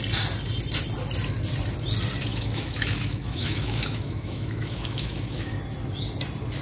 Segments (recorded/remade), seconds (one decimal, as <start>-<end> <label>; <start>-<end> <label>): 0.0-2.3 recorded; 2.3-5.6 remade; 5.6-6.6 recorded